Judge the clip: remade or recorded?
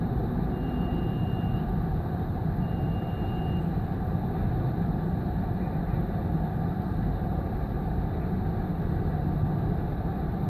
recorded